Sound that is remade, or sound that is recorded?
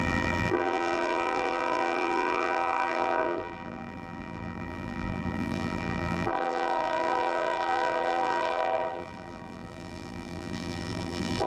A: remade